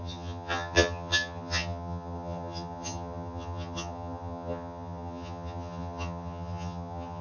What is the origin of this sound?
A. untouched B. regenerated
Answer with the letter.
B